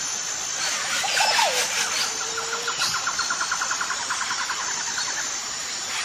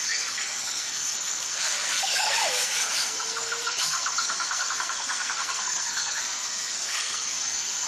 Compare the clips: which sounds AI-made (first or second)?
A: second